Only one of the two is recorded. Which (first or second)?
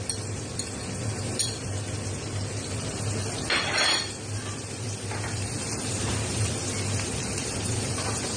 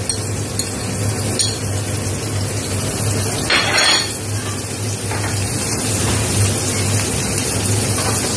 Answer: second